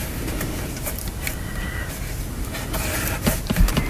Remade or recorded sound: recorded